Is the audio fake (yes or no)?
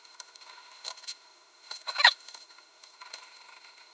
yes